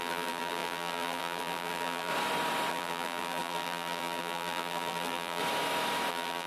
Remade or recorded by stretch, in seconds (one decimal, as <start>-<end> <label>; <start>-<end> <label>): 0.0-2.1 remade; 2.1-2.7 recorded; 2.7-5.4 remade; 5.4-6.1 recorded; 6.1-6.5 remade